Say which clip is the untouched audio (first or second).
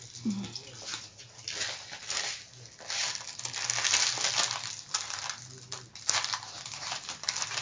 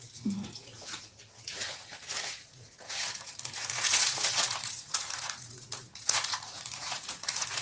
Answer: first